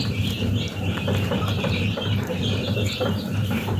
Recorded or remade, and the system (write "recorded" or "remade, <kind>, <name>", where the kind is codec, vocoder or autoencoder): remade, vocoder, BigVGAN v2